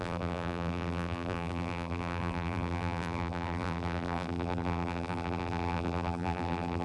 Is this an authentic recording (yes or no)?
no